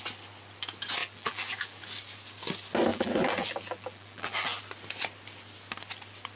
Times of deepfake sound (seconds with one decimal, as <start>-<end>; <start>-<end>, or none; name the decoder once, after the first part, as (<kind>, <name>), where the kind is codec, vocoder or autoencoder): 1.0-1.8 (vocoder, BigVGAN v2); 2.9-4.6